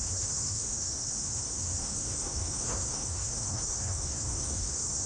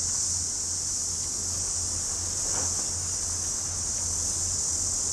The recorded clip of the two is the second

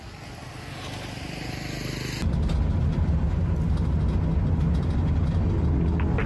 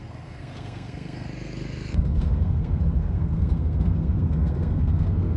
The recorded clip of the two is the first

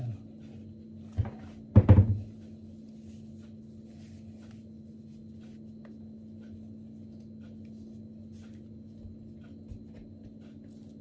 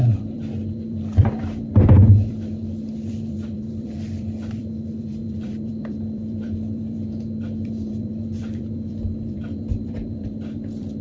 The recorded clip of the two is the first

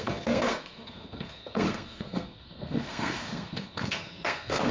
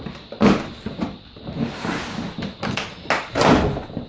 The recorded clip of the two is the second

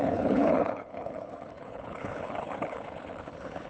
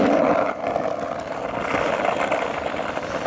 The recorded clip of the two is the second